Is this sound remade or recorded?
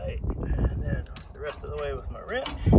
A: recorded